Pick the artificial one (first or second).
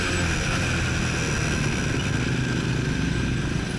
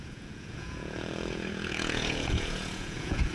second